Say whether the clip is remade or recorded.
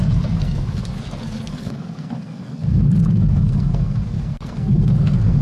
remade